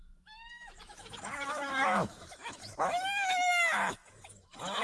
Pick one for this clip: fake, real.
fake